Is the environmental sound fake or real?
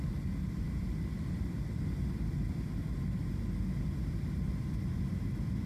real